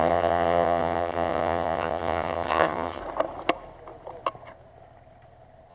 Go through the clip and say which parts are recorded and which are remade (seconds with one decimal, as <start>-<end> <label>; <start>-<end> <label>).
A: 0.0-3.0 remade; 3.0-5.7 recorded